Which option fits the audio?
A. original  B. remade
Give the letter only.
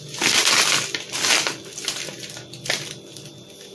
A